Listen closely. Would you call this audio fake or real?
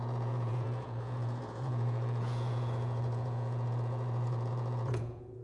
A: fake